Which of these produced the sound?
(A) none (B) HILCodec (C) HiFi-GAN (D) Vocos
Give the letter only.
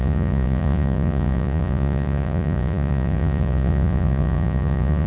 D